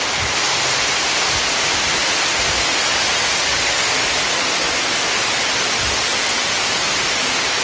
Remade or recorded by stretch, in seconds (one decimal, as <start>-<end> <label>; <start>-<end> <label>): 0.0-6.1 recorded; 6.1-6.8 remade; 6.8-7.6 recorded